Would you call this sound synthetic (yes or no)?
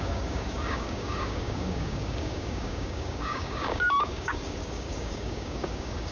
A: yes